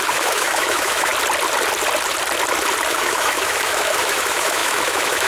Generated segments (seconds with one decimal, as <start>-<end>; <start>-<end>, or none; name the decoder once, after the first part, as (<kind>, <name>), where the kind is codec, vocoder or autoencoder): 0.0-1.1 (autoencoder, DAC-VAE); 2.9-5.3